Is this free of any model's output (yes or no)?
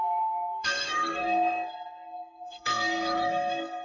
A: no